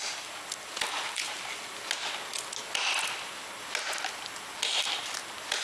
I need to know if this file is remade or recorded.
recorded